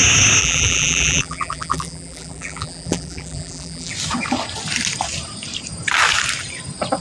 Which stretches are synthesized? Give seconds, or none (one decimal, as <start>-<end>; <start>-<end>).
0.4-3.9

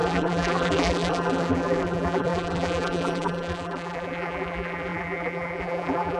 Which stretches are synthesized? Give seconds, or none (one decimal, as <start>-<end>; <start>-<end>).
0.0-6.2

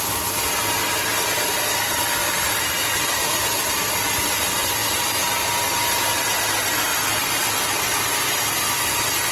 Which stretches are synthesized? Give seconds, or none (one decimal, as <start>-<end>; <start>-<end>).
2.2-4.2; 6.9-8.0

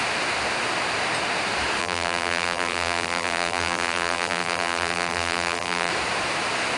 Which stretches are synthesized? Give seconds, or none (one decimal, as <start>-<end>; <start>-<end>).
1.8-5.9

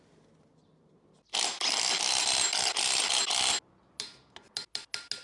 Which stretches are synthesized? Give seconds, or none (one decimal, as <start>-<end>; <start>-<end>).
none

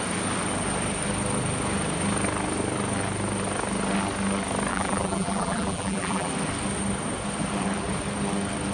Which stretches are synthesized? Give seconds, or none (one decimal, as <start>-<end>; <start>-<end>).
4.7-6.3

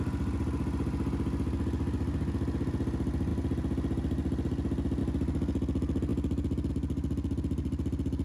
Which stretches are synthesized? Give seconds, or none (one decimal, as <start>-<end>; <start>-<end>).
none

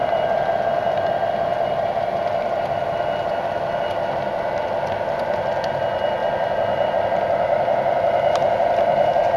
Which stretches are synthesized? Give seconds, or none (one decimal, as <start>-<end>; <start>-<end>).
6.2-6.9